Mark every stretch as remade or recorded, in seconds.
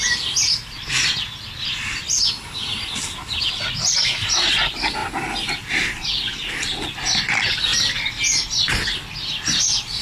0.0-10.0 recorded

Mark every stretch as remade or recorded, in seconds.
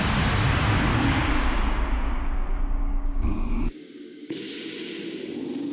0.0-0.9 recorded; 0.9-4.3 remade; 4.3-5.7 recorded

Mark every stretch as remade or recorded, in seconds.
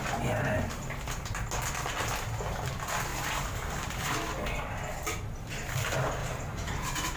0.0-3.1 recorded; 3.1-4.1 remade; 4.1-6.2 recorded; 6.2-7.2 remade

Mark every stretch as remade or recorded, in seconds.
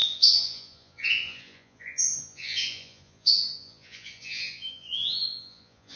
0.0-6.0 remade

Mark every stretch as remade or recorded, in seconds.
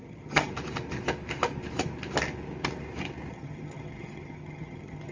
0.0-0.5 remade; 0.5-3.3 recorded; 3.3-5.1 remade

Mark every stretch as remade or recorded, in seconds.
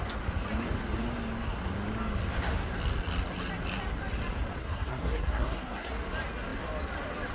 0.0-4.6 recorded; 4.6-5.9 remade; 5.9-7.3 recorded